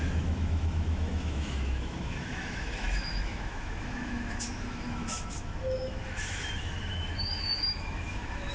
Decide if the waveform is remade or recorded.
remade